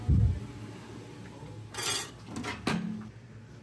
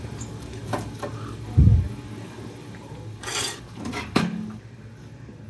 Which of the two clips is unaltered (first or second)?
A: first